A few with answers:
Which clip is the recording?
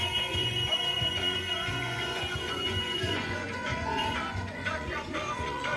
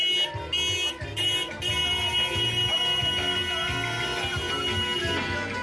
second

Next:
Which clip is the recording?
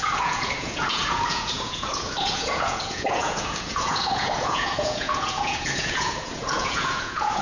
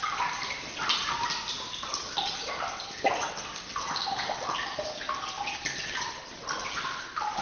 second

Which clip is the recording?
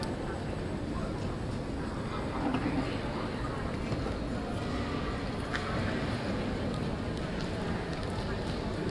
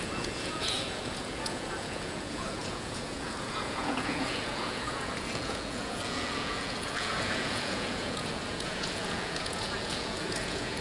first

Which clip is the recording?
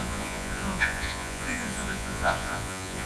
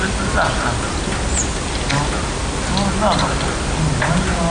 second